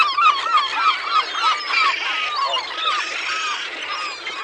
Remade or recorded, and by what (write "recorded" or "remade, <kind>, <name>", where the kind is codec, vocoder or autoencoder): recorded